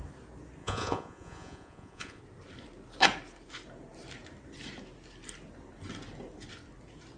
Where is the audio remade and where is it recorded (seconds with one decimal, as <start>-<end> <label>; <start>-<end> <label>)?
0.0-0.6 recorded; 0.6-2.2 remade; 2.2-7.2 recorded